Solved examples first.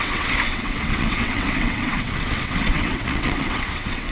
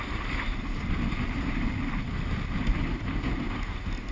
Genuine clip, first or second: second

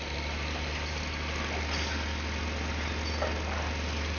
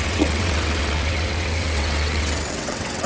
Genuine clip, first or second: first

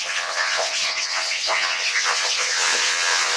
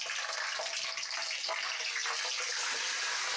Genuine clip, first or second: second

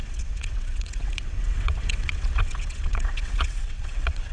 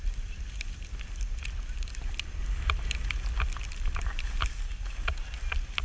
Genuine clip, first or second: second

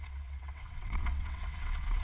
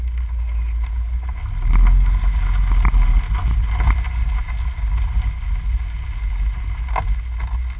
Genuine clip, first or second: second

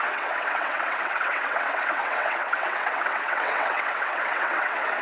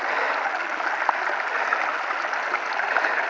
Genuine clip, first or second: second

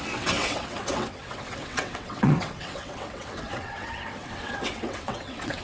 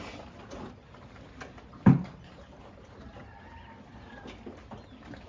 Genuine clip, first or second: second